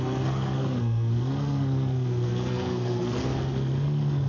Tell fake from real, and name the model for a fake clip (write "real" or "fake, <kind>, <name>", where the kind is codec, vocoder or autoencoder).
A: fake, codec, SNAC